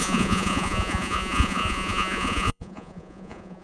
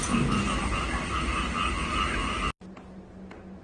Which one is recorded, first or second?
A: second